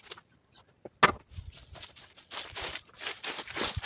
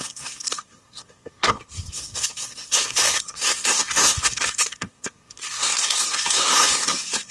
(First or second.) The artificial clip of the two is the second